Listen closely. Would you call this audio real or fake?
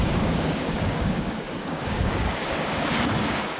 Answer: fake